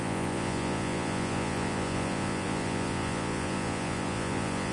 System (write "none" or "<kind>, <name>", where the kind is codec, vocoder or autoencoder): vocoder, Vocos